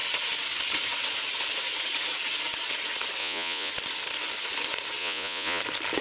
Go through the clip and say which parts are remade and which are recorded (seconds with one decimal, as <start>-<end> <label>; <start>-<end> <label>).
0.0-3.2 recorded; 3.2-3.7 remade; 3.7-5.0 recorded; 5.0-5.6 remade; 5.6-6.0 recorded